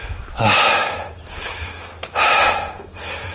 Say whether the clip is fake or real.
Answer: fake